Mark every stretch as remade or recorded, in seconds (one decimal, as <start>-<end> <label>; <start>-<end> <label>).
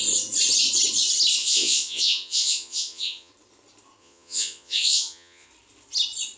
0.0-1.4 recorded; 1.4-3.3 remade; 3.3-4.0 recorded; 4.0-5.5 remade; 5.5-6.4 recorded